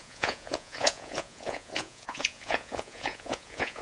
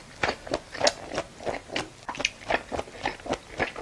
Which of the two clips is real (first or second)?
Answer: second